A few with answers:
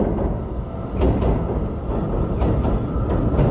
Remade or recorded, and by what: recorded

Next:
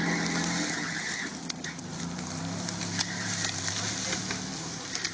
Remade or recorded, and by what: recorded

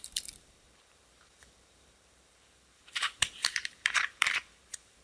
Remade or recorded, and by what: remade, vocoder, BigVGAN v2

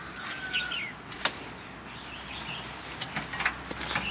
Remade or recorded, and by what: recorded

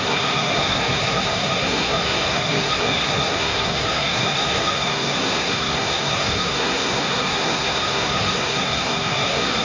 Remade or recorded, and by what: remade, codec, SNAC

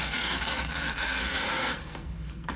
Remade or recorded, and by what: remade, codec, SNAC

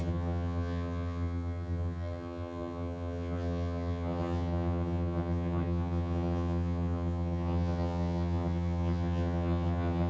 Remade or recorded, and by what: remade, vocoder, HiFi-GAN